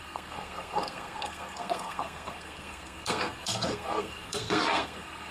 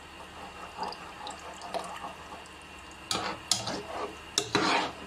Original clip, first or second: second